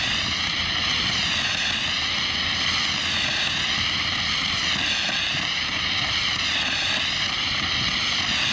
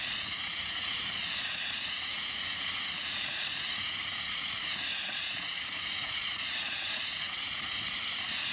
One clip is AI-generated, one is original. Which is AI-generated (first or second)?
second